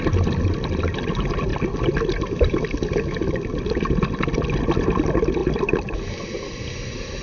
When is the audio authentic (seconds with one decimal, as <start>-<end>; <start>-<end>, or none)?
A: 0.0-7.2